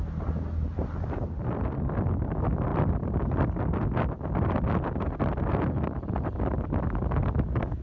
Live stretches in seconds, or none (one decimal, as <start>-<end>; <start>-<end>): 0.0-7.8